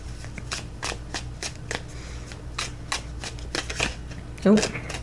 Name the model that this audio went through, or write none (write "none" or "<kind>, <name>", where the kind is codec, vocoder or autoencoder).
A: none